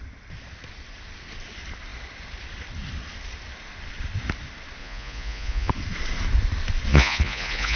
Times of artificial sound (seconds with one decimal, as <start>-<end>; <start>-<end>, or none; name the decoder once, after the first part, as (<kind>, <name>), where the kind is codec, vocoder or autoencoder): 4.8-5.7 (vocoder, Vocos); 6.9-7.8